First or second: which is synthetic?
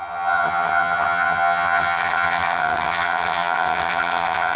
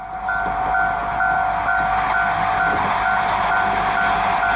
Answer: first